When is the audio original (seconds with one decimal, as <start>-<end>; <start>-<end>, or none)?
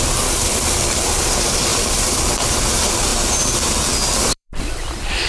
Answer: 3.1-4.2